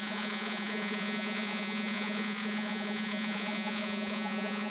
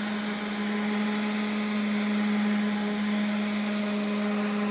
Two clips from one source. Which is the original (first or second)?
second